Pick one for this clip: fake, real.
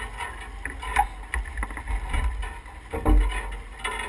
real